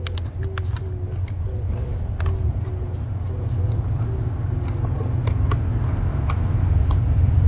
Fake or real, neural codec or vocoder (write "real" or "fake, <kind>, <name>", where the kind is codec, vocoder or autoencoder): real